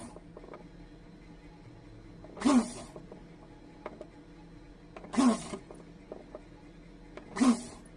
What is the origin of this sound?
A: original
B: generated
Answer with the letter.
A